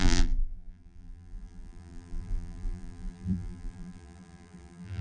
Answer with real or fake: fake